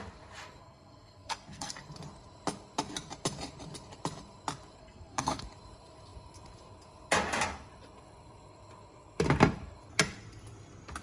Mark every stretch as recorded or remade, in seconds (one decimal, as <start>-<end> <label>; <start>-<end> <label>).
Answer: 0.0-0.6 recorded; 0.6-1.7 remade; 1.7-4.8 recorded; 4.8-5.4 remade; 5.4-11.0 recorded